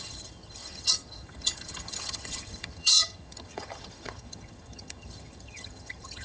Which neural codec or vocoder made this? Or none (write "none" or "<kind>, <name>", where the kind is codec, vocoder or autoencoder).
vocoder, HiFi-GAN